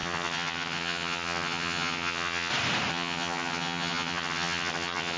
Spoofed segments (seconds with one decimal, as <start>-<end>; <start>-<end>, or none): 0.0-2.5; 2.9-5.2